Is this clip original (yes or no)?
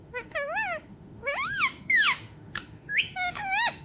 no